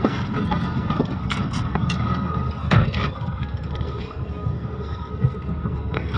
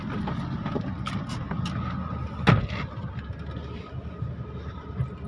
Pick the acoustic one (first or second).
second